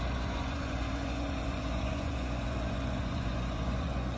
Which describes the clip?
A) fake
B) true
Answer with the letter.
A